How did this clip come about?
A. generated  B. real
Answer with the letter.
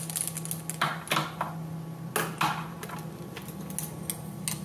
B